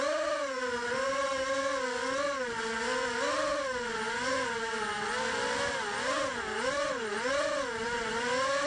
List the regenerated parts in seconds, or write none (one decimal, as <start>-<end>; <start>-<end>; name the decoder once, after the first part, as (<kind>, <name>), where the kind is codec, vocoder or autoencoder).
none